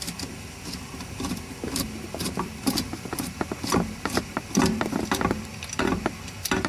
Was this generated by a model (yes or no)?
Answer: yes